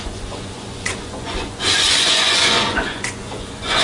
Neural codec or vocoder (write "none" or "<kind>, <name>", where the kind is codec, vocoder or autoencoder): vocoder, Vocos